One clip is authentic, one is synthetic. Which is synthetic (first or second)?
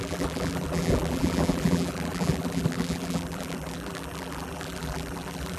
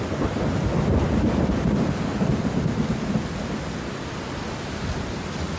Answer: first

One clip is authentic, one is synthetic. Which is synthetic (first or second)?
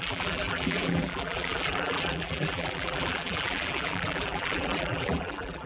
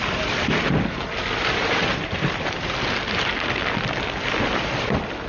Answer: first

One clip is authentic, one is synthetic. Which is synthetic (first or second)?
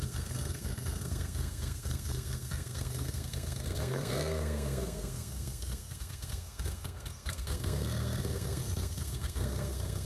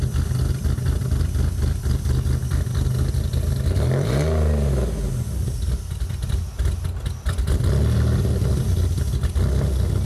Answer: first